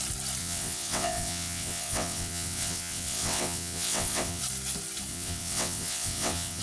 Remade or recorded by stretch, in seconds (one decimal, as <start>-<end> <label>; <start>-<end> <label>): 0.0-0.4 recorded; 0.4-4.4 remade; 4.4-5.1 recorded; 5.1-6.6 remade